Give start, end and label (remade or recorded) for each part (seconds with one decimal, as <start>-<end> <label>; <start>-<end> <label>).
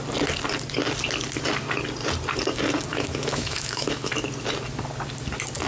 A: 0.0-2.9 recorded; 2.9-4.1 remade; 4.1-5.7 recorded